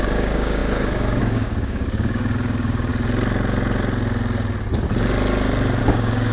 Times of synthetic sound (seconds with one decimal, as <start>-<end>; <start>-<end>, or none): 0.0-2.9; 5.8-6.3